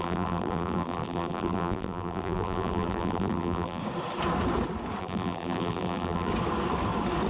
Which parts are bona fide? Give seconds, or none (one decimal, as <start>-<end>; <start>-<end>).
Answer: 3.8-5.0; 6.3-7.3